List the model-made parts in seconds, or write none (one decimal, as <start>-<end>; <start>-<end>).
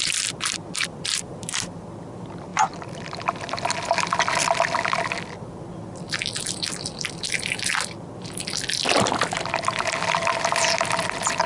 none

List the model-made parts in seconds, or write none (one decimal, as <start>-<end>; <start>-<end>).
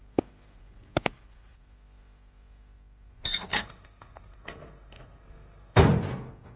3.5-5.8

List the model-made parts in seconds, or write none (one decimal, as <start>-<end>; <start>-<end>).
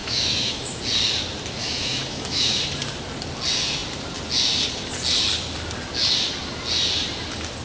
0.0-0.8; 1.6-2.6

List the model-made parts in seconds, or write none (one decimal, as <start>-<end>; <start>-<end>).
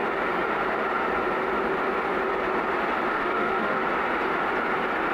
3.1-3.8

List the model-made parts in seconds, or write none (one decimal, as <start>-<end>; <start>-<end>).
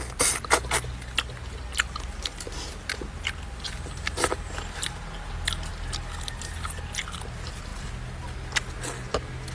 7.7-8.4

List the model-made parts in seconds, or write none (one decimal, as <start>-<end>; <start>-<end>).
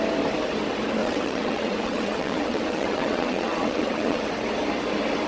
1.0-4.2